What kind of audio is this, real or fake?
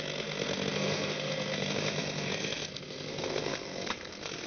fake